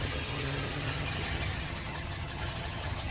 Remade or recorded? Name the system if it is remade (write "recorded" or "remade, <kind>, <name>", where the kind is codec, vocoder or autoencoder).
remade, vocoder, HiFi-GAN